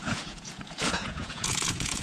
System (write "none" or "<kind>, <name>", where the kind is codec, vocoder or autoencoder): vocoder, Vocos